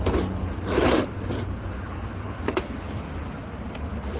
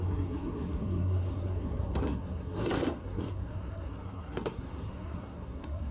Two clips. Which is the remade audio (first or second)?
second